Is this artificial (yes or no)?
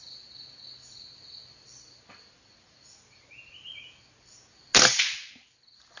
no